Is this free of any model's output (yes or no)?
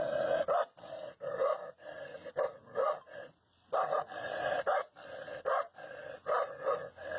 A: yes